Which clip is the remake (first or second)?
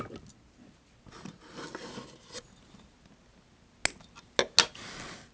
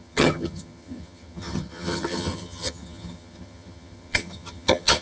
second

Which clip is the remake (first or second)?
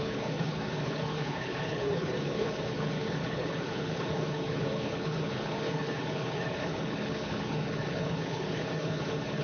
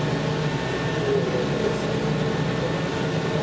first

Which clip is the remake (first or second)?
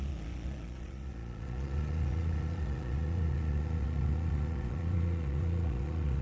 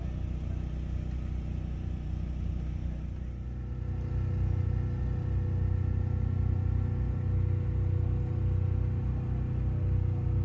first